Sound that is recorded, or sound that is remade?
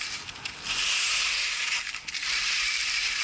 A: recorded